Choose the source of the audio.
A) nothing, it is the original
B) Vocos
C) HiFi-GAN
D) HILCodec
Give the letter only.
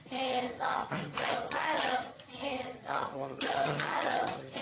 C